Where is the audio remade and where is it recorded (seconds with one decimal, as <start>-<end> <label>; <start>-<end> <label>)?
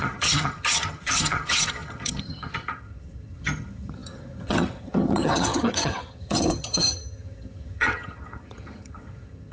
0.0-9.5 remade